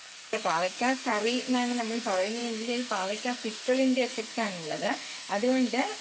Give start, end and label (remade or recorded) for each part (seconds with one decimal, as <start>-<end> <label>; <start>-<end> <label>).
0.0-6.0 remade